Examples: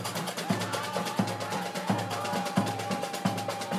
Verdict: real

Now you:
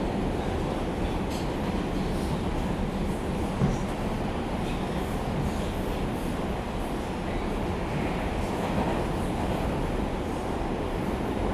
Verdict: real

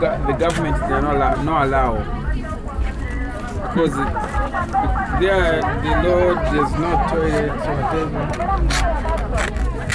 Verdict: real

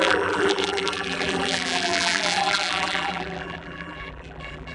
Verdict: fake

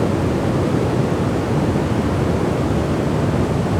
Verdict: real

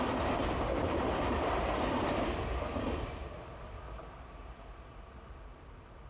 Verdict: real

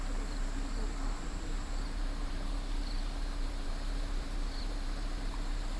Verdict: fake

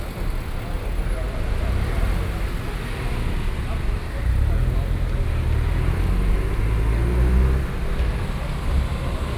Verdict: real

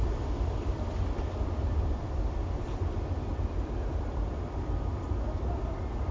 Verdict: fake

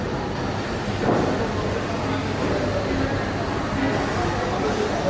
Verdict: real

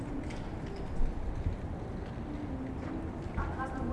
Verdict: real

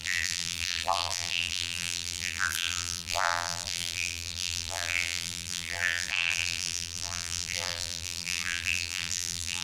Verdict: fake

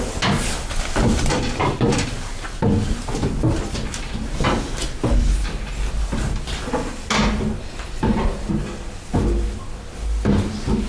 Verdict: real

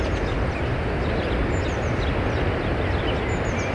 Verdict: real